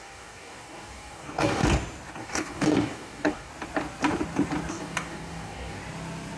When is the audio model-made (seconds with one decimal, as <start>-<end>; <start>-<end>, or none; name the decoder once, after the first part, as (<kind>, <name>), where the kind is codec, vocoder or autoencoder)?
0.0-1.6 (codec, DAC); 2.2-3.5; 4.7-5.8